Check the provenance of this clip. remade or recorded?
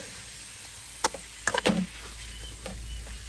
recorded